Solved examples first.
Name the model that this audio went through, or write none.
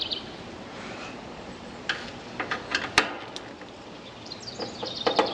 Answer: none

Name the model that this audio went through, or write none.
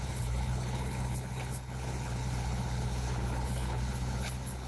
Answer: codec, HILCodec